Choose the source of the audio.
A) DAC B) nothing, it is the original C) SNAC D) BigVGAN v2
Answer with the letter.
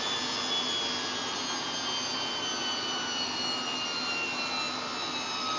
B